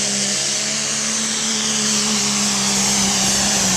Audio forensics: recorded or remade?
recorded